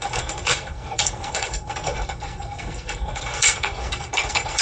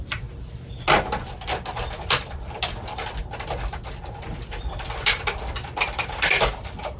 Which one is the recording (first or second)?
second